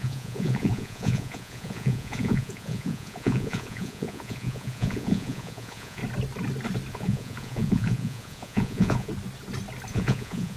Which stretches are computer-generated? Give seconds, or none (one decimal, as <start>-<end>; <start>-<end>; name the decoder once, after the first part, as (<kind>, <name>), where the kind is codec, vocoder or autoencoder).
0.0-6.0 (vocoder, Vocos); 6.9-9.1; 9.9-10.6